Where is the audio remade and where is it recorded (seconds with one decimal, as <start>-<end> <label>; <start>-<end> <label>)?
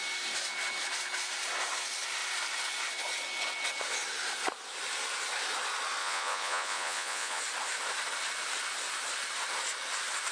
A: 0.0-6.0 recorded; 6.0-7.4 remade; 7.4-10.3 recorded